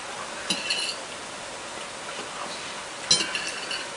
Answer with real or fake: real